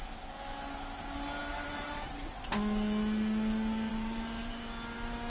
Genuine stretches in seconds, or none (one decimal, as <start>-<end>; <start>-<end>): 0.0-1.4; 2.1-3.9; 4.6-5.3